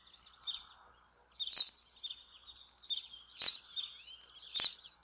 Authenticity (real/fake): real